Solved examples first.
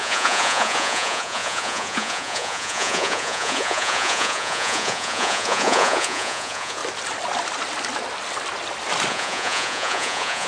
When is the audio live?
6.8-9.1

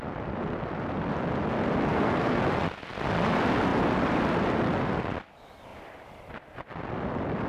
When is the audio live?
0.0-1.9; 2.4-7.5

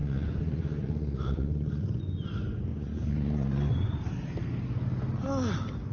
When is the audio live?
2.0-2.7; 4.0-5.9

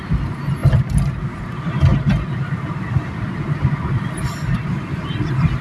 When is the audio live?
0.0-5.6